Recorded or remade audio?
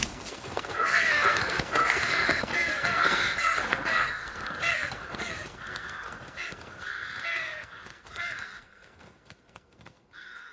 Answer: remade